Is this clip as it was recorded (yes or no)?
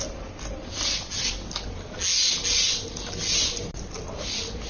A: yes